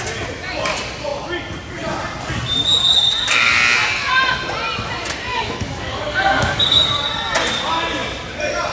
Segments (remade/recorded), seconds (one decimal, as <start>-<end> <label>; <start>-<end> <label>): 0.0-5.3 recorded; 5.3-7.0 remade; 7.0-8.7 recorded